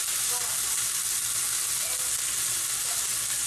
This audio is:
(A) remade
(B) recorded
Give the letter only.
B